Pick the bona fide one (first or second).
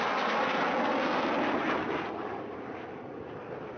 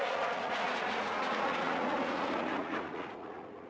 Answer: first